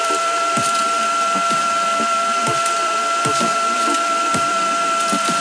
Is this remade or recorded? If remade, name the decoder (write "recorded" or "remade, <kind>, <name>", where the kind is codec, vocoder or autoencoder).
remade, vocoder, BigVGAN v2